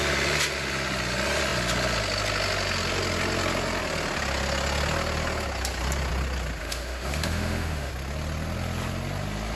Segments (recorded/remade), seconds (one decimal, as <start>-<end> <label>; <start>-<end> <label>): 0.0-6.6 recorded; 6.6-7.9 remade; 7.9-9.6 recorded